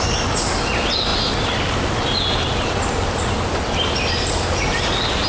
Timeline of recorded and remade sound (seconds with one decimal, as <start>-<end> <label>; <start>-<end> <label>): 0.0-5.3 recorded